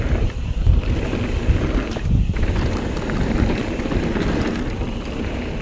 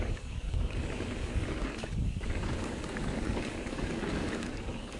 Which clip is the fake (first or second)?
second